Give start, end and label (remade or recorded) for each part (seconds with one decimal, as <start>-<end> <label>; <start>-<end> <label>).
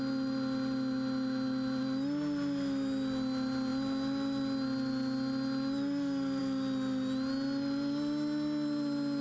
0.0-9.2 recorded